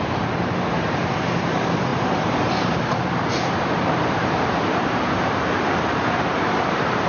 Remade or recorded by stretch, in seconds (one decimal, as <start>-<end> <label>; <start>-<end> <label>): 0.0-7.1 remade